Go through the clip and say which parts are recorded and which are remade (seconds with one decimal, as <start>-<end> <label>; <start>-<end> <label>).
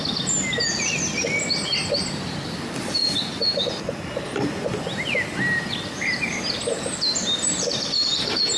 0.0-7.2 recorded; 7.2-8.6 remade